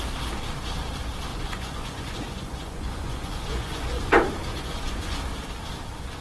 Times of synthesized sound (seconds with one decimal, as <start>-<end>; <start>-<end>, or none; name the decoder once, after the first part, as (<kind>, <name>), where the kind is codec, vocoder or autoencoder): 1.3-4.1 (vocoder, Vocos); 4.5-5.2